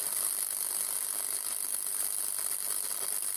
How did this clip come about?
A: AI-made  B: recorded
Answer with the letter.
B